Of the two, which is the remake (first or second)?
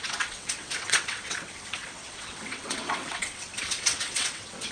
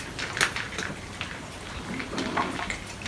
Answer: first